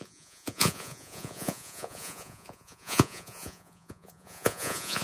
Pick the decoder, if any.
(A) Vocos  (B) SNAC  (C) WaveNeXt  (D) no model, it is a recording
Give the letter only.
A